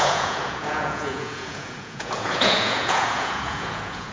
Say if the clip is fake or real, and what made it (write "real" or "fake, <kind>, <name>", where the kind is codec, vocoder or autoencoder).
fake, vocoder, Vocos